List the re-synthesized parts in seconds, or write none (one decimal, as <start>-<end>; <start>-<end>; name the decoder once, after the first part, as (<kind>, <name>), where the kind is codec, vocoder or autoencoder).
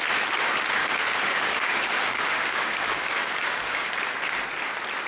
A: 0.8-3.9 (codec, DAC)